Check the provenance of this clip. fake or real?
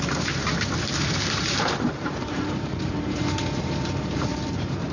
fake